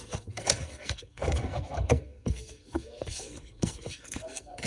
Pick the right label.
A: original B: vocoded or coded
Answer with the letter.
B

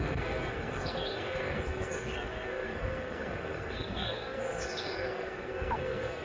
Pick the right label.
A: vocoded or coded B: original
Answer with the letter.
A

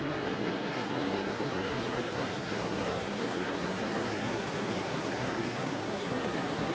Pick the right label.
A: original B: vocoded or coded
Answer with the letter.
B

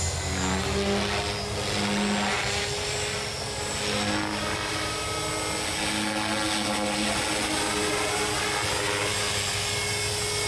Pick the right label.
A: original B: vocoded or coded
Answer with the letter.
A